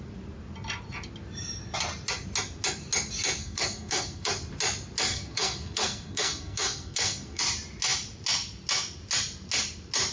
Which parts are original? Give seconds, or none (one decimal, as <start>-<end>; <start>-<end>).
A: 0.0-3.4; 4.3-5.1; 7.4-10.1